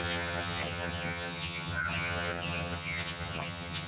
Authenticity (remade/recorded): remade